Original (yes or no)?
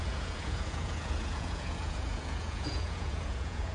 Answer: no